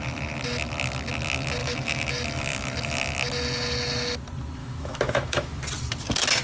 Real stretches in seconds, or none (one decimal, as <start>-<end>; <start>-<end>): 0.0-1.6; 2.1-4.6; 5.5-6.4